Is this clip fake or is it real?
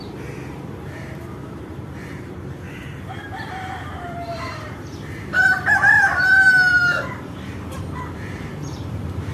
fake